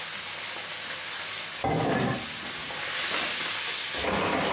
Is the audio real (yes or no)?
yes